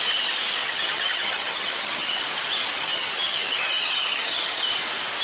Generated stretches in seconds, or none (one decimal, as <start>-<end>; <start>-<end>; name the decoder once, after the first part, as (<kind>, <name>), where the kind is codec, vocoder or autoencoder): 0.6-2.2 (vocoder, HiFi-GAN); 2.6-4.6